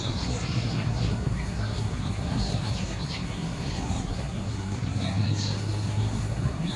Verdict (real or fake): fake